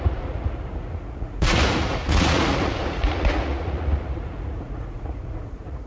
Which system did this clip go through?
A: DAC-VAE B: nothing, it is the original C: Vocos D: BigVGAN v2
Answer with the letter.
C